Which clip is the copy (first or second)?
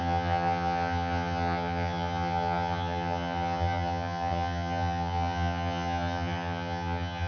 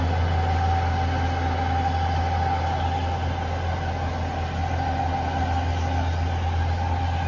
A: first